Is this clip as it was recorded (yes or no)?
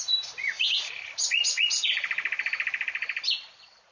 yes